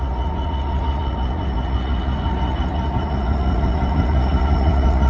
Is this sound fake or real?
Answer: fake